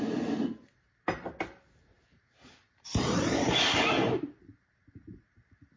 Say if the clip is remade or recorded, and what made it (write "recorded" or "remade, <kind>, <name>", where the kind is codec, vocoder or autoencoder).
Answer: remade, vocoder, BigVGAN v2